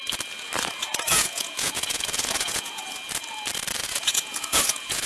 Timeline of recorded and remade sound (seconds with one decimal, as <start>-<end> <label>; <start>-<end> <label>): 0.0-0.9 recorded; 0.9-2.8 remade; 2.8-3.8 recorded; 3.8-5.1 remade